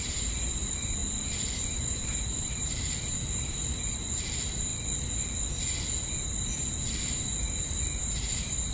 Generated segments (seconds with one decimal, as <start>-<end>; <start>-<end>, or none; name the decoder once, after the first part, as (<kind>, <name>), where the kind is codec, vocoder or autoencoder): 0.0-1.0 (vocoder, BigVGAN v2); 1.6-4.7; 6.3-8.7